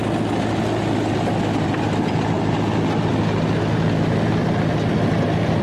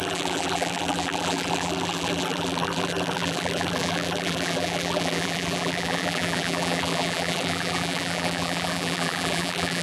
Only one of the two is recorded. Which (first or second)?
first